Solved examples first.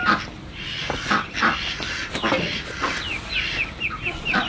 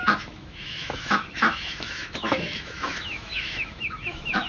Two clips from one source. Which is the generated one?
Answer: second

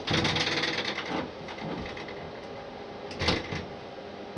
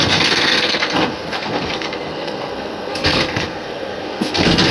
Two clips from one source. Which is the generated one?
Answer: second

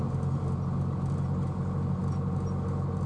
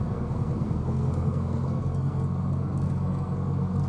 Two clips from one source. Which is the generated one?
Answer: second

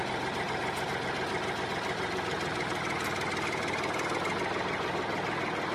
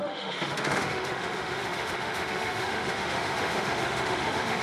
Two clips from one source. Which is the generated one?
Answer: second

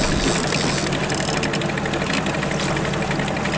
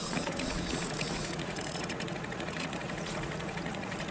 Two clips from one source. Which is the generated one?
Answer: second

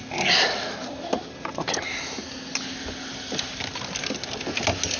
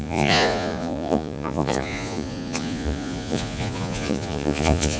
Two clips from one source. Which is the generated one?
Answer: second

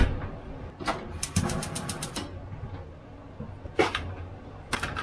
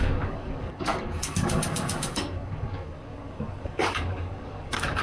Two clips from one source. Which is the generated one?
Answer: second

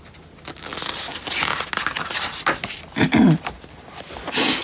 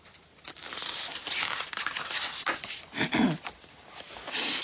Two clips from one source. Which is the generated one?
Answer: second